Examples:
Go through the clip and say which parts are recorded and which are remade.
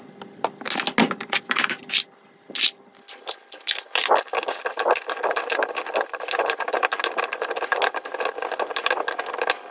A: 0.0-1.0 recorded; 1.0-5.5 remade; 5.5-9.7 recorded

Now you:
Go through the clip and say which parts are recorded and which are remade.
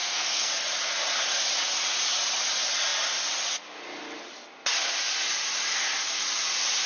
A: 0.0-0.5 remade; 0.5-5.7 recorded; 5.7-6.2 remade; 6.2-6.9 recorded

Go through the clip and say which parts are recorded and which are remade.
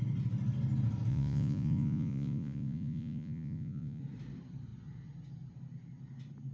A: 0.0-1.1 recorded; 1.1-4.0 remade; 4.0-6.5 recorded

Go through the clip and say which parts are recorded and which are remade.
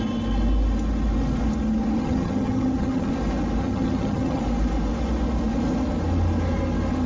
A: 0.0-2.0 recorded; 2.0-3.1 remade; 3.1-3.6 recorded; 3.6-4.4 remade; 4.4-7.1 recorded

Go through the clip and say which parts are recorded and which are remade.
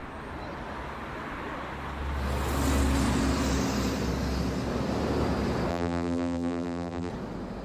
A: 0.0-5.7 recorded; 5.7-7.1 remade; 7.1-7.6 recorded